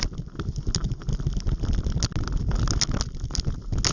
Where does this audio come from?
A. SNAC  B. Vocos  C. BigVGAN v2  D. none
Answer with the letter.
D